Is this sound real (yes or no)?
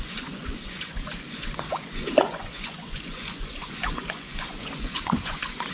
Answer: no